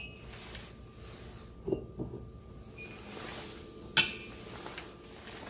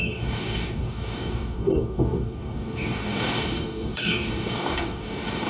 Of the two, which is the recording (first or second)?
first